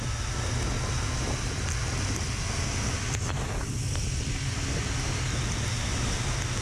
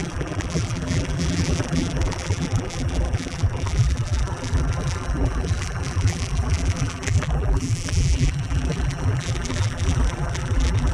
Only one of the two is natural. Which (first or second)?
first